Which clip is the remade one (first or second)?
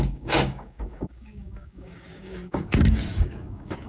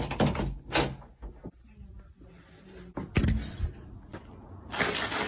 first